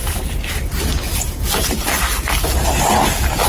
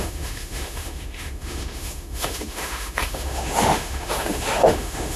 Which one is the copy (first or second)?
second